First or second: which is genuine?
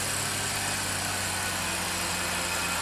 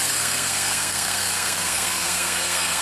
first